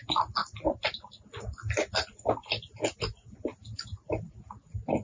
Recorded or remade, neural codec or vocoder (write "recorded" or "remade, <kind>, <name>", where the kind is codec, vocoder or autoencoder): recorded